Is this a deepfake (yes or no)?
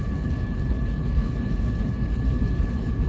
yes